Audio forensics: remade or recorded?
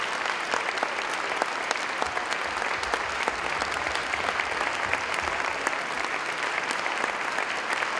recorded